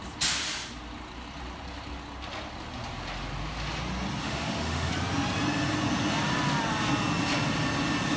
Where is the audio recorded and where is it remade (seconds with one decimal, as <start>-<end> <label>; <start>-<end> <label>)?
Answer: 0.0-4.2 recorded; 4.2-4.9 remade; 4.9-8.2 recorded